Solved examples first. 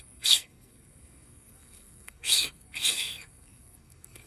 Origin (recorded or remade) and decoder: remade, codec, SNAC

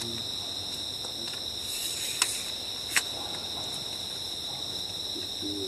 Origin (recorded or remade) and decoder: recorded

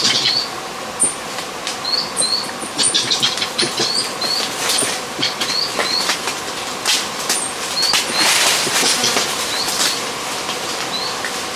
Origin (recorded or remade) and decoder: recorded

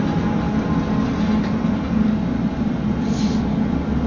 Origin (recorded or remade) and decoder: recorded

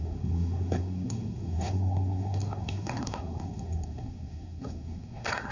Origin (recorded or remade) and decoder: remade, codec, SNAC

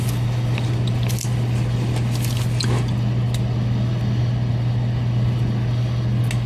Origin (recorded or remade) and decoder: recorded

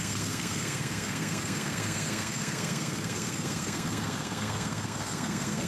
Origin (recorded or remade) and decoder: remade, codec, SNAC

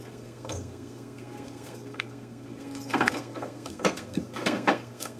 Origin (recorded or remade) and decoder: remade, codec, SNAC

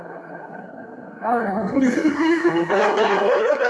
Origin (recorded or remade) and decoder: remade, codec, SNAC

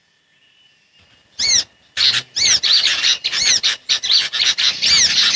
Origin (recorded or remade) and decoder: recorded